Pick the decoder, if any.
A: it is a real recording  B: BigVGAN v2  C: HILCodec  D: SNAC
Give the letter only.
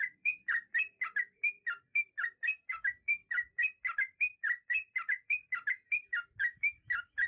B